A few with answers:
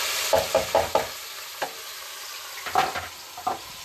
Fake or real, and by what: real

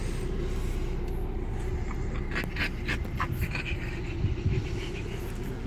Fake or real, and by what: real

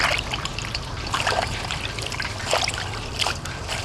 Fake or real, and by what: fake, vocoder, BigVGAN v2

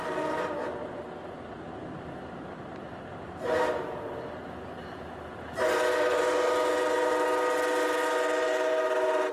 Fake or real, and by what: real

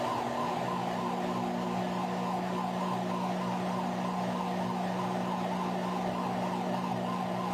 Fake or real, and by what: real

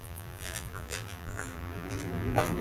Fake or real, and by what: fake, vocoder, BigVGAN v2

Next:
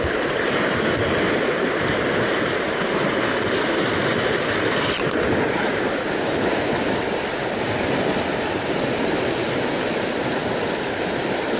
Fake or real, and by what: real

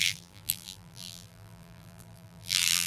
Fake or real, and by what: fake, vocoder, BigVGAN v2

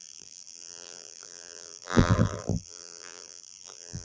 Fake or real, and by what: fake, vocoder, BigVGAN v2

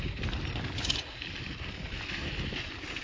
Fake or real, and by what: real